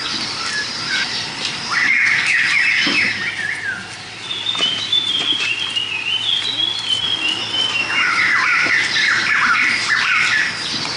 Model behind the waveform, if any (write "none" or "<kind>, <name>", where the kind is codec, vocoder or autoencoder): vocoder, BigVGAN v2